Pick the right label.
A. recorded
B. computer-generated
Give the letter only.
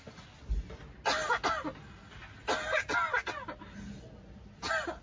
A